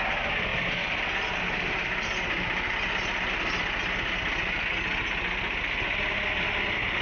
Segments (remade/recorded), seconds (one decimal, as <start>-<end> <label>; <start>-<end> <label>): 0.0-7.0 recorded